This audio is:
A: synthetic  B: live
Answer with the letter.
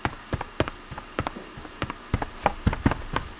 B